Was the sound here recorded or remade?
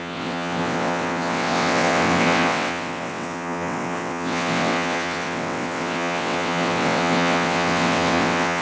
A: remade